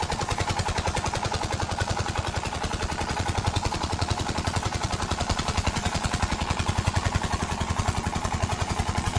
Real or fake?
fake